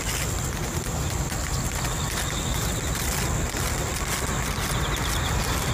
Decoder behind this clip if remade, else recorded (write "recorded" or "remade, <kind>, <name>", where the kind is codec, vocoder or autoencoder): recorded